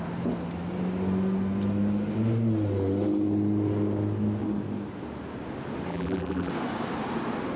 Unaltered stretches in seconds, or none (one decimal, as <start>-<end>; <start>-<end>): 0.0-5.9; 6.5-7.6